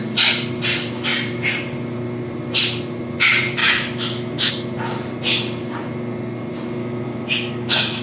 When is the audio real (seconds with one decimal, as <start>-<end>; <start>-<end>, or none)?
0.0-3.6; 4.5-6.8